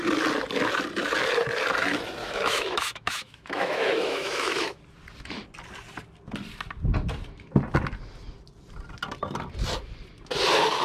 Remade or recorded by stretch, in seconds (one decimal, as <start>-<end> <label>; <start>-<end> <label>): 0.0-2.2 recorded; 2.2-4.8 remade; 4.8-10.8 recorded